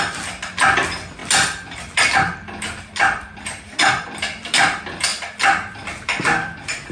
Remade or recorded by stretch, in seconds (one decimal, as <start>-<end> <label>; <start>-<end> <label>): 0.0-6.9 recorded

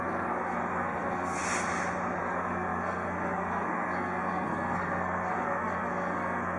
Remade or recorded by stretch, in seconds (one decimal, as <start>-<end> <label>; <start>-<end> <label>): 0.0-1.4 remade; 1.4-2.2 recorded; 2.2-6.6 remade

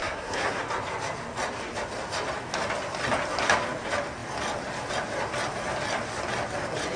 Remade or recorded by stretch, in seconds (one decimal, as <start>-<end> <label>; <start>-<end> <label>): 0.0-0.6 remade; 0.6-7.0 recorded